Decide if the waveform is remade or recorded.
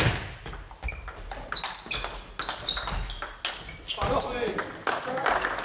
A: recorded